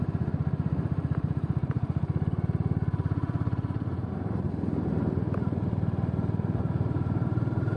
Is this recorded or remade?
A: remade